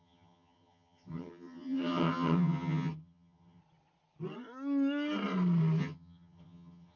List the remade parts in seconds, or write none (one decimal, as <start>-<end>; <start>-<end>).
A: 0.0-3.6; 5.8-7.0